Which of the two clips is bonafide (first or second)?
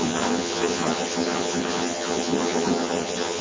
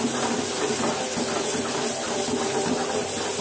second